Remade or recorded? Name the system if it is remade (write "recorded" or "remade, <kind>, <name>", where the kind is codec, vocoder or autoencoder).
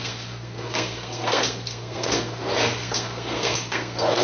remade, codec, SNAC